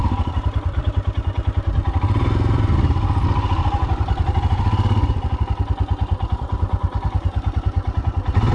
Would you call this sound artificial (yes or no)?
no